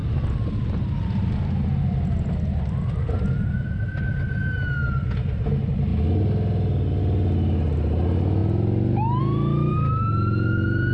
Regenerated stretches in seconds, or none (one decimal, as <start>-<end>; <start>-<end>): none